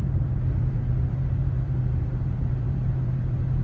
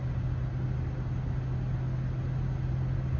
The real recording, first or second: second